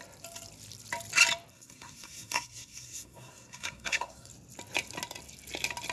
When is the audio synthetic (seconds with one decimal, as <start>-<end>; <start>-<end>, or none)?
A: 1.5-4.3